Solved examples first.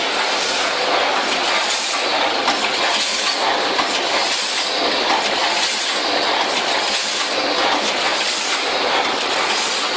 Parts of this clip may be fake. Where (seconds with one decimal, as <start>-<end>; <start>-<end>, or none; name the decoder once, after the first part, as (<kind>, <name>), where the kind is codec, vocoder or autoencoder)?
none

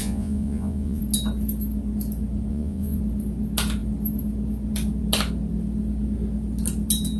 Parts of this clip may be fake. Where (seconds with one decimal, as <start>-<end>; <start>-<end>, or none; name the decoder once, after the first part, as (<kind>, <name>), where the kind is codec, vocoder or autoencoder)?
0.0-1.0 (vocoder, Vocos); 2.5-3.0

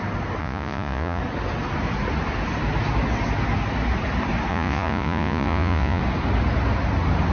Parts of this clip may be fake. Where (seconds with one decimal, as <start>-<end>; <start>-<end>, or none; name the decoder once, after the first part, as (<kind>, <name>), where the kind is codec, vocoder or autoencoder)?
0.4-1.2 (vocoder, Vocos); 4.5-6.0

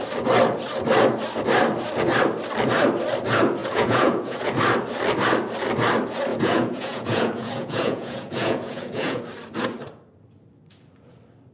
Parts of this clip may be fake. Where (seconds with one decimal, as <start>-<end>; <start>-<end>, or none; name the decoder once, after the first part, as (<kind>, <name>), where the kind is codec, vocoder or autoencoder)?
3.6-4.5 (vocoder, Vocos); 6.3-9.2